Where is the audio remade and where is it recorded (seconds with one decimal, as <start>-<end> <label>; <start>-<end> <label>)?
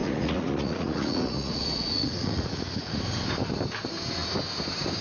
0.0-3.0 remade; 3.0-5.0 recorded